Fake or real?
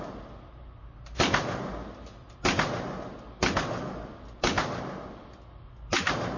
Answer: real